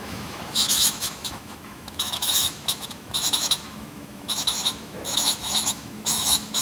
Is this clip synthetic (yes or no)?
yes